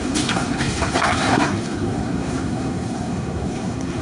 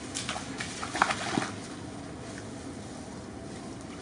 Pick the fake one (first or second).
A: first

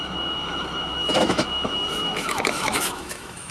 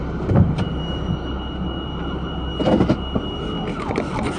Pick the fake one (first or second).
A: first